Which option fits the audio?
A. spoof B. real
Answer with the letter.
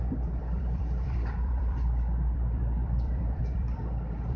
A